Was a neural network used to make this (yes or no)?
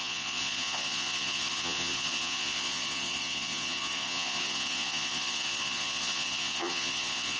yes